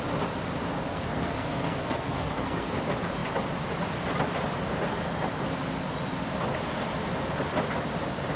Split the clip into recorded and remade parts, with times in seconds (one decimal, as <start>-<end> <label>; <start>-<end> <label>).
0.0-0.9 recorded; 0.9-2.8 remade; 2.8-8.4 recorded